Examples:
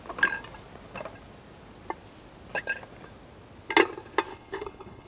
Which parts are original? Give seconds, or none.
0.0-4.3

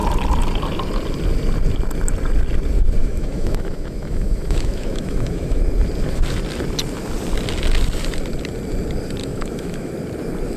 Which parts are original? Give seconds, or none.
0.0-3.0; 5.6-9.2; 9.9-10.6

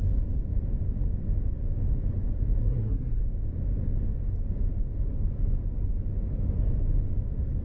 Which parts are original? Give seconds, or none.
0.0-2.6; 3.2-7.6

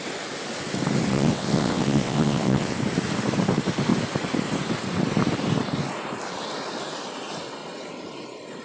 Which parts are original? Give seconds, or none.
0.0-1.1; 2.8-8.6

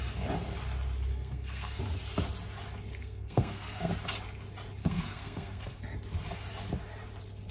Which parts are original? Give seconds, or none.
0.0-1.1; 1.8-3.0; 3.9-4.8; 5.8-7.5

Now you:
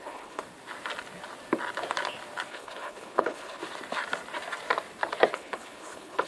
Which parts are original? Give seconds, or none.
0.4-2.5; 3.6-5.3